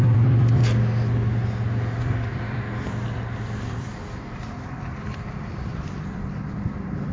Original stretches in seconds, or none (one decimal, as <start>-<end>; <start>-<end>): 0.6-2.0